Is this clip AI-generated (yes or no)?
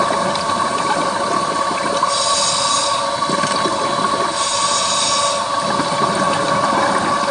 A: no